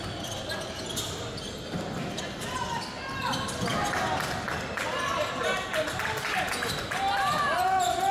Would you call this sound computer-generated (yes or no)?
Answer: no